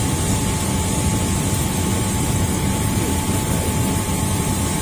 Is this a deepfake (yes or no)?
no